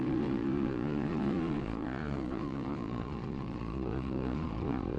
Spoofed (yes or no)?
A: yes